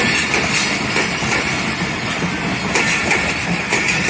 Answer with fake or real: real